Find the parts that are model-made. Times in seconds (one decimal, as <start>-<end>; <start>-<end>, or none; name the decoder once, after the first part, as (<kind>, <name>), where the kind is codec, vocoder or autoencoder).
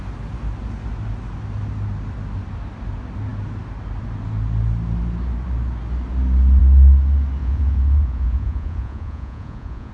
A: 7.4-9.9 (vocoder, Vocos)